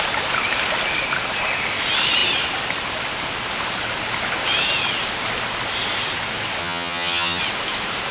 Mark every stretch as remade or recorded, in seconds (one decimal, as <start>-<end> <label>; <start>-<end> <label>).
0.0-6.6 recorded; 6.6-7.4 remade; 7.4-8.1 recorded